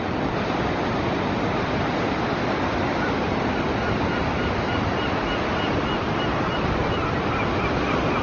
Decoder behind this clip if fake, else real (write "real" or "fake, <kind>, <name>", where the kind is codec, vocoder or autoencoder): real